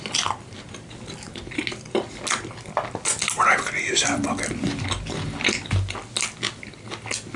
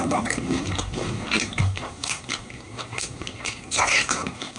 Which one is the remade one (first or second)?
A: second